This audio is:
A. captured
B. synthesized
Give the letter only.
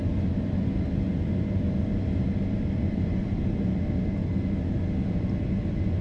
A